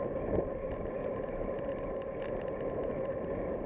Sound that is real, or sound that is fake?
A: real